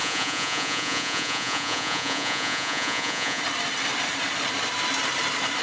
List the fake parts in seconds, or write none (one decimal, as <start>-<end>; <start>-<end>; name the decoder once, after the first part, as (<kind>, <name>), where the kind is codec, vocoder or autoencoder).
0.0-3.4 (vocoder, Vocos)